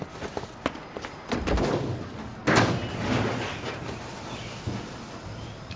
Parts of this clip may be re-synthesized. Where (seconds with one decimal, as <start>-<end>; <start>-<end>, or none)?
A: none